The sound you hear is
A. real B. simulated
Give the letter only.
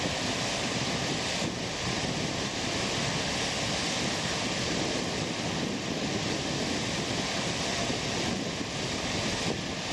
A